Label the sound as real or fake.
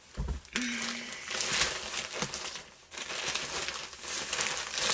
real